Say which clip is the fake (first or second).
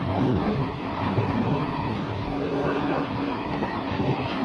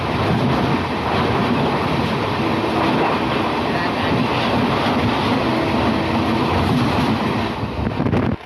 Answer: first